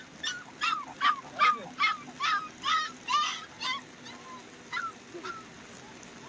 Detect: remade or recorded recorded